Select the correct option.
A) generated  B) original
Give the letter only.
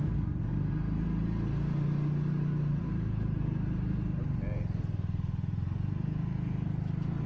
B